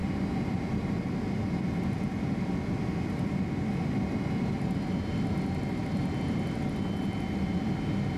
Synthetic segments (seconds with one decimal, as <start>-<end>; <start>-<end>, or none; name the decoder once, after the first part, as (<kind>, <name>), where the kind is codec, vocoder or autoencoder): 5.8-6.5 (vocoder, BigVGAN v2)